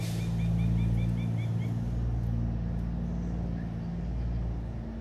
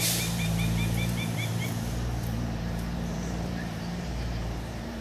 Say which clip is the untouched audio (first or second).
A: first